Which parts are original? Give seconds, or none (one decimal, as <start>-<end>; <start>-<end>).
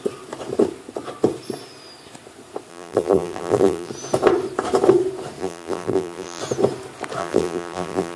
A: 0.0-2.7; 3.9-5.4; 6.4-7.2